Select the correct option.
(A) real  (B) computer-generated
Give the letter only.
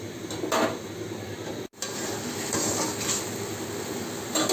A